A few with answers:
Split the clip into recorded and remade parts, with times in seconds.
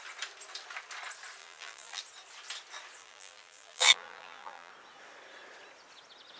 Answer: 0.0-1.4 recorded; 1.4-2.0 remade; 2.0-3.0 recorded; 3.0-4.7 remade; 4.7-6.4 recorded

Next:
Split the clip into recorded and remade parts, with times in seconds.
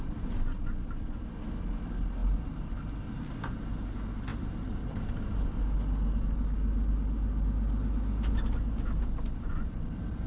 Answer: 0.0-10.3 recorded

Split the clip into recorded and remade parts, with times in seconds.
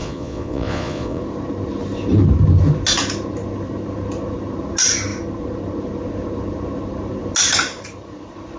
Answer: 0.0-1.2 remade; 1.2-8.6 recorded